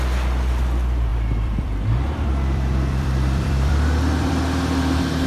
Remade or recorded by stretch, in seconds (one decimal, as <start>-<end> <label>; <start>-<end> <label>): 0.0-1.1 recorded; 1.1-4.3 remade; 4.3-5.3 recorded